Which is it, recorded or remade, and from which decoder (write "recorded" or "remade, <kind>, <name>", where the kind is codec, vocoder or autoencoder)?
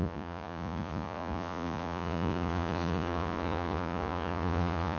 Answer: remade, vocoder, Vocos